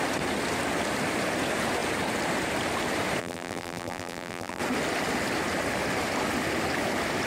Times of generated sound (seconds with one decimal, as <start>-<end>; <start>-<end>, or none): 3.2-4.6

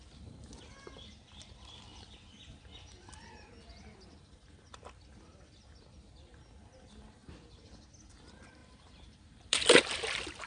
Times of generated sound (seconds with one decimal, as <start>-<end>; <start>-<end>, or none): 8.6-9.8